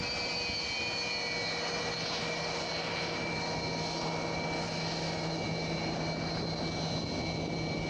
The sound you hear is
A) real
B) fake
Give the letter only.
A